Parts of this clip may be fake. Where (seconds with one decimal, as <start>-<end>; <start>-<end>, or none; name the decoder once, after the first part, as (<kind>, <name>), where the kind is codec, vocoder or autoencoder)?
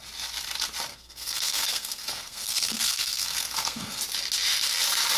0.9-4.0 (codec, SNAC)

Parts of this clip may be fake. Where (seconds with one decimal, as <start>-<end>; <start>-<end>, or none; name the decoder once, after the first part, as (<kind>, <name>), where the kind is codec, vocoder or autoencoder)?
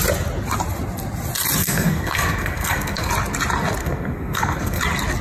1.6-3.1 (codec, SNAC); 3.8-4.8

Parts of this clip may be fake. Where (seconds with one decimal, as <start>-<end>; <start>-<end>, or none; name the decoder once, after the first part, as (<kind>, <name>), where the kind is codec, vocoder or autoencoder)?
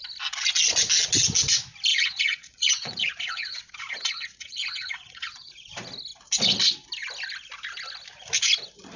1.9-5.5 (vocoder, Vocos)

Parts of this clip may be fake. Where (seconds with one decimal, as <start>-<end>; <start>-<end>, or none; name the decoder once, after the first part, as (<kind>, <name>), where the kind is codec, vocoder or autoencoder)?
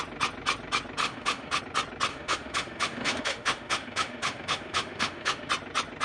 1.0-1.6 (autoencoder, DAC-VAE); 2.1-5.5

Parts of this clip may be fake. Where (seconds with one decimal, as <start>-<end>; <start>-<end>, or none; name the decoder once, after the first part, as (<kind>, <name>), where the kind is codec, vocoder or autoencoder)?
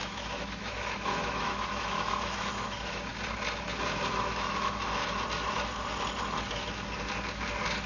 0.0-3.1 (autoencoder, DAC-VAE); 4.1-5.0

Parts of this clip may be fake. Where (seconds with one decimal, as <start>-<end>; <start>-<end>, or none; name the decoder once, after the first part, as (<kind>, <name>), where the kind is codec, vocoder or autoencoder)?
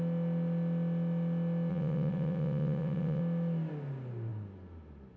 1.7-3.2 (vocoder, WaveNeXt)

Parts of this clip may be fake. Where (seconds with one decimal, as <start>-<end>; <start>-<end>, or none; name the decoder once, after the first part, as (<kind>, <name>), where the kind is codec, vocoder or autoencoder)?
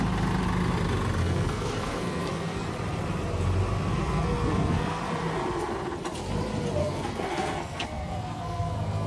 1.2-2.7 (codec, SNAC); 4.0-5.0; 6.8-9.1